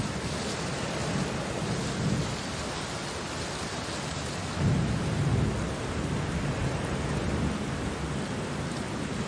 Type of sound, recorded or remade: recorded